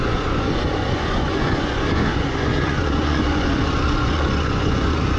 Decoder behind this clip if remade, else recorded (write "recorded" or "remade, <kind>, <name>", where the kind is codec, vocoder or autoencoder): remade, vocoder, Vocos